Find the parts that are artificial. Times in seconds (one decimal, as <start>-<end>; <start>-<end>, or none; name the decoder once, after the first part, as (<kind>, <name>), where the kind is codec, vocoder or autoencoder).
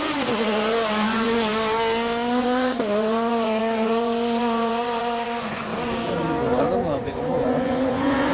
0.0-1.5 (vocoder, Vocos); 2.4-5.7; 6.6-8.3